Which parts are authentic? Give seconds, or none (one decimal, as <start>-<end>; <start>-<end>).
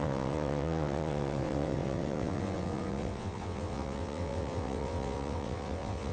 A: none